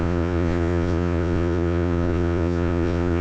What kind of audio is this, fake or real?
fake